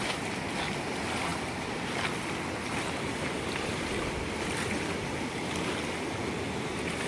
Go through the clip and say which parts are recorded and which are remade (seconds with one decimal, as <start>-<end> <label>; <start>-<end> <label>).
0.0-7.1 recorded